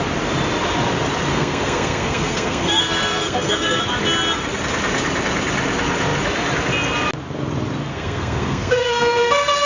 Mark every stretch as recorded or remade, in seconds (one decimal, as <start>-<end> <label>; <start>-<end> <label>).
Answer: 0.0-1.3 recorded; 1.3-3.8 remade; 3.8-7.9 recorded; 7.9-9.7 remade